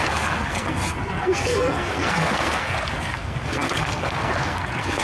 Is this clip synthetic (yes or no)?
yes